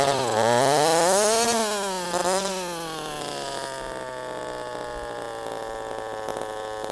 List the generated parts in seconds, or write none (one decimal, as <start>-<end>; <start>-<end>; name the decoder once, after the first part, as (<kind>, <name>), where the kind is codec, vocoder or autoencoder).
none

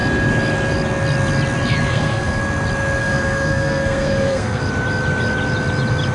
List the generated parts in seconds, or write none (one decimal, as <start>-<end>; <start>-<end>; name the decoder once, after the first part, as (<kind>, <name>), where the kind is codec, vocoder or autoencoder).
1.9-2.4 (codec, SNAC); 3.0-4.6

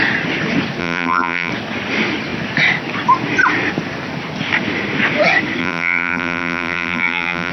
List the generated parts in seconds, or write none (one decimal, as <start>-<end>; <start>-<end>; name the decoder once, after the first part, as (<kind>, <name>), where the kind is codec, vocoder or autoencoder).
0.8-1.5 (vocoder, BigVGAN v2); 5.6-7.5

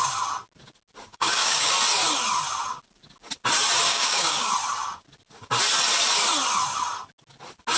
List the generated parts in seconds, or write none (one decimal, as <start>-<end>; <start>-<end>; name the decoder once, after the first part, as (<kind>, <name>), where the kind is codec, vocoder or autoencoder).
1.1-1.7 (codec, DAC); 3.9-4.5